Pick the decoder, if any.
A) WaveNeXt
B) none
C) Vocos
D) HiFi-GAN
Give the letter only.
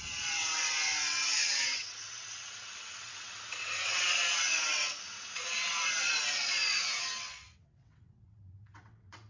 A